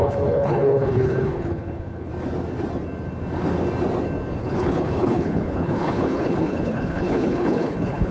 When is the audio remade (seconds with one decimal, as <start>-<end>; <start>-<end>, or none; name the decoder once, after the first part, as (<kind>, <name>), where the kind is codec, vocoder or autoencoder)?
0.0-2.1 (codec, HILCodec); 4.4-8.1